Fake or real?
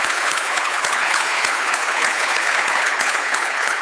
fake